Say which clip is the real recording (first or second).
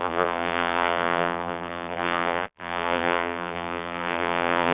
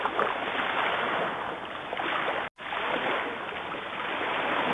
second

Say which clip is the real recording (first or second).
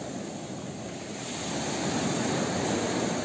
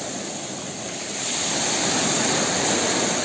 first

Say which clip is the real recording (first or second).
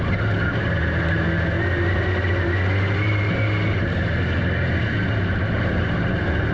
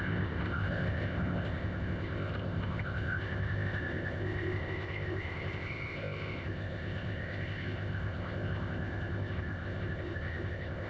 first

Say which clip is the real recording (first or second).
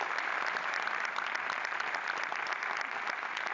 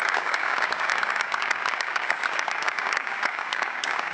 first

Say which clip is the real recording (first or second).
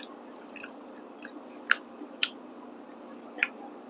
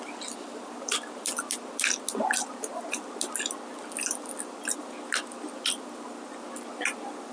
second